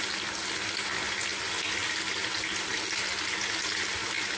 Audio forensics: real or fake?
real